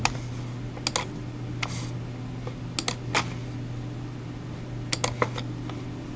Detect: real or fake real